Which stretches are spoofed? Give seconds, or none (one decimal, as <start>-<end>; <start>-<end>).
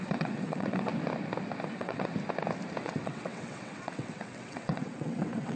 0.0-0.9; 1.7-2.1; 2.8-5.6